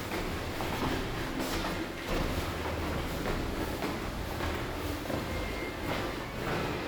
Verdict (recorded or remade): recorded